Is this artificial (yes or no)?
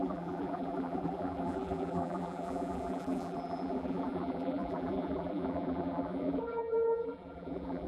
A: yes